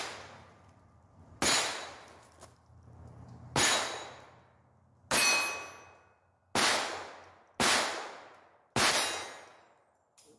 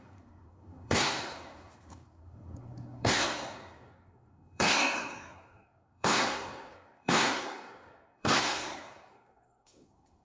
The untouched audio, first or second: first